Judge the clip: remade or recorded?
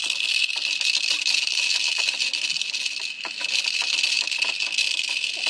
recorded